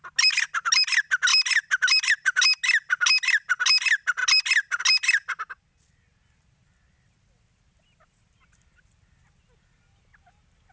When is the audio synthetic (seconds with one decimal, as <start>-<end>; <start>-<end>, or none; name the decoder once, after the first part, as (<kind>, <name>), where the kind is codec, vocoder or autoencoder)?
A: none